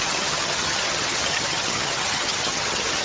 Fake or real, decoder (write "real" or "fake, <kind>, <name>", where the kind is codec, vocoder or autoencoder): fake, vocoder, HiFi-GAN